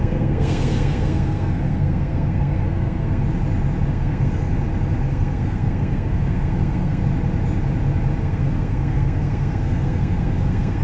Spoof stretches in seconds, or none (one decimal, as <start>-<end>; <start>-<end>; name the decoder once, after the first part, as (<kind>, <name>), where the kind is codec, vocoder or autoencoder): 0.0-3.2 (codec, SNAC); 3.9-4.5; 5.1-7.0; 8.2-10.8